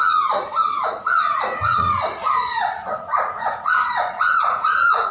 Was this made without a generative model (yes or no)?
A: no